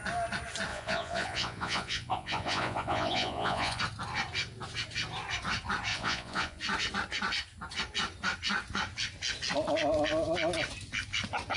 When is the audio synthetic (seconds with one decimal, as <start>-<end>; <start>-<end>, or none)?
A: 0.7-3.8; 5.9-6.6